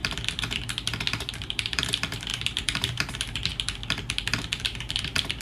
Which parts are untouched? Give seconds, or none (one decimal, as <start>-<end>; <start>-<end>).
0.0-1.3; 3.5-4.6